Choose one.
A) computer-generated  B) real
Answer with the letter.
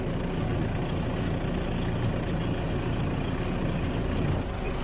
B